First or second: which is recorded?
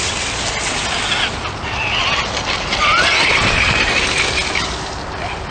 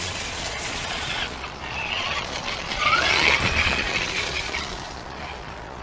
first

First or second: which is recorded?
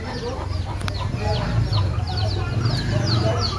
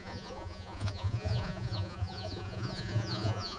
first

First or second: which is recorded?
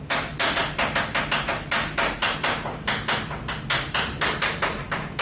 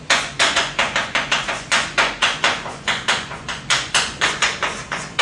first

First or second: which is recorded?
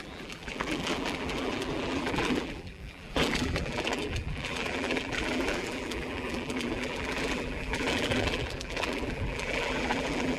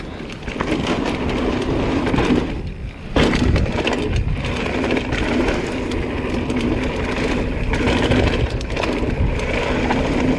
second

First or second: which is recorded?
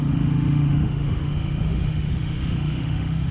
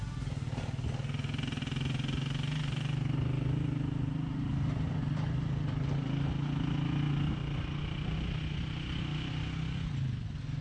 second